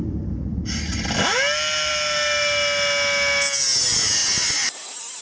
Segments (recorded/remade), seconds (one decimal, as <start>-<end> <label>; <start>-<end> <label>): 0.0-5.2 recorded